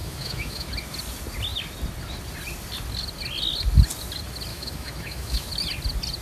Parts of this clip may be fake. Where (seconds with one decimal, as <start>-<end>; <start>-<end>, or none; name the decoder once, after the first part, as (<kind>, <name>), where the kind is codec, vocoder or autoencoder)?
0.0-0.7 (autoencoder, DAC-VAE); 4.5-5.5